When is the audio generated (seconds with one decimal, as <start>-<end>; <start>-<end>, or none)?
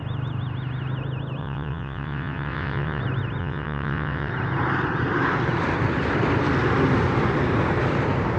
1.4-3.0; 3.4-4.3